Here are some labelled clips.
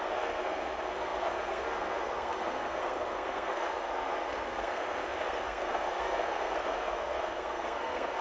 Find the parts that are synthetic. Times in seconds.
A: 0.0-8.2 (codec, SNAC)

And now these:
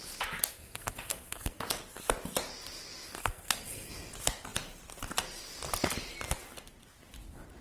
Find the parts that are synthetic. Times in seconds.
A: 0.5-1.6 (codec, SNAC); 3.2-3.9

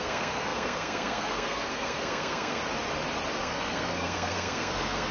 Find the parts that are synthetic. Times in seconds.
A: 0.0-2.6 (codec, SNAC); 3.4-5.1

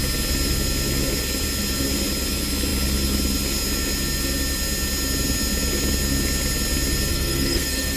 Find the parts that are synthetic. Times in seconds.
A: 7.1-8.0 (codec, SNAC)